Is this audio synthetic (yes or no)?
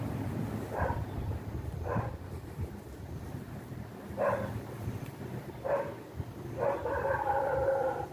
yes